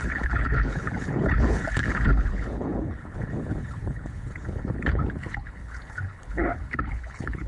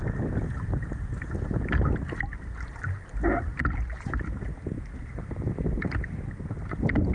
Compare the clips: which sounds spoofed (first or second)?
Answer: first